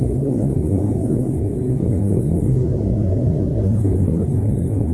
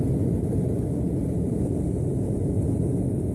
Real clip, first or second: second